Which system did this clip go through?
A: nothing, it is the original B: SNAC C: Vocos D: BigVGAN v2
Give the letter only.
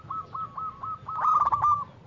A